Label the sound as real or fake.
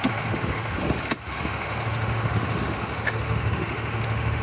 fake